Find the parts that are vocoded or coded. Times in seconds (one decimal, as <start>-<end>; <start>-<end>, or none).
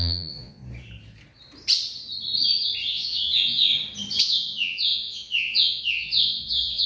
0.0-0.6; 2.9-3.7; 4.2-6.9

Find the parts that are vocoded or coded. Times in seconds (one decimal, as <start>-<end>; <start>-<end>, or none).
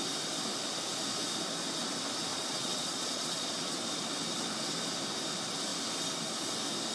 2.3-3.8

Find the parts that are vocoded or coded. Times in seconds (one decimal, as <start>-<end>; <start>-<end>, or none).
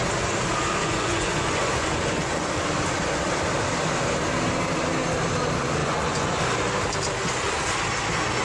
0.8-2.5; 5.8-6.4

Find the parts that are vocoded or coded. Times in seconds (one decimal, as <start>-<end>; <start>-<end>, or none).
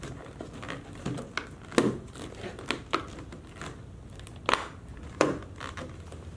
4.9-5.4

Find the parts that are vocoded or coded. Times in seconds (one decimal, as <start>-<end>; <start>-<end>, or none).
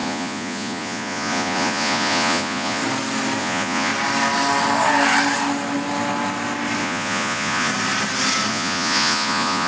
0.0-2.8; 3.4-3.9; 6.8-7.7; 8.5-9.7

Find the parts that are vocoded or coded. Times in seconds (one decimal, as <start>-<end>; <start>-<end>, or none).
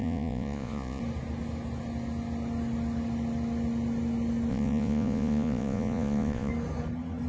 0.0-1.0; 4.5-6.5